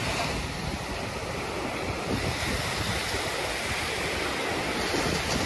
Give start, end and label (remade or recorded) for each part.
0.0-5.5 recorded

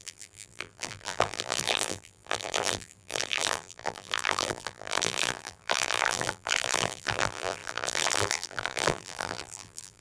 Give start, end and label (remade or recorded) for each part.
0.0-10.0 remade